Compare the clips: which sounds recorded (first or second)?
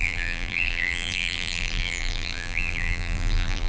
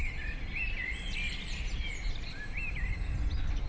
second